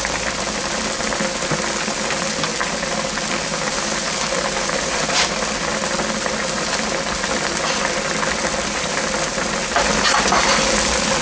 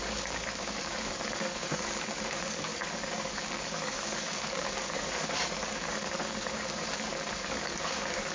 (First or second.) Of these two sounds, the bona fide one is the first